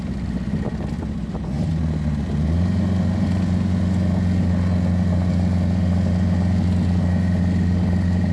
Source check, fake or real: real